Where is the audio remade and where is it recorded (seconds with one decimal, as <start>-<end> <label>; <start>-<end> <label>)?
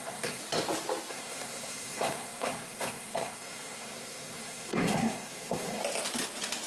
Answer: 0.0-0.4 remade; 0.4-1.1 recorded; 1.1-5.8 remade; 5.8-6.7 recorded